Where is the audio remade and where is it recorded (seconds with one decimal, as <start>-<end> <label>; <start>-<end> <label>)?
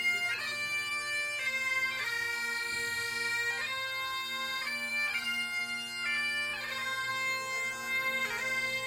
0.0-0.9 recorded; 0.9-2.1 remade; 2.1-4.9 recorded; 4.9-5.6 remade; 5.6-6.5 recorded; 6.5-7.1 remade; 7.1-8.9 recorded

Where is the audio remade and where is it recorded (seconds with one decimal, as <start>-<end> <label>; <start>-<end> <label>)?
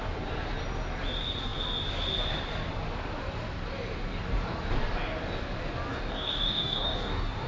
0.0-5.9 recorded; 5.9-7.5 remade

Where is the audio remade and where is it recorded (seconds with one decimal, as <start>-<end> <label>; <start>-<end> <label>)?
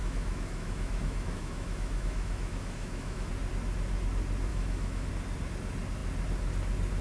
0.0-3.3 remade; 3.3-4.5 recorded; 4.5-5.1 remade; 5.1-7.0 recorded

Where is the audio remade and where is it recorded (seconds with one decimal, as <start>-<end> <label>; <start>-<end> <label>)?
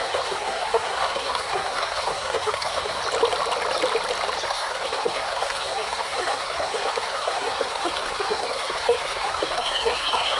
0.0-3.0 remade; 3.0-4.4 recorded; 4.4-10.4 remade